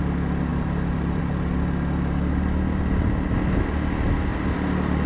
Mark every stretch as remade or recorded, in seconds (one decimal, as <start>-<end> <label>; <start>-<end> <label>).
0.0-0.5 recorded; 0.5-1.2 remade; 1.2-4.3 recorded; 4.3-5.1 remade